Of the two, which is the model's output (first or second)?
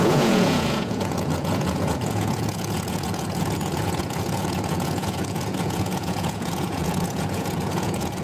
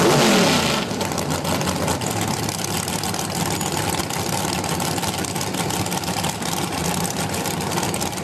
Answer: first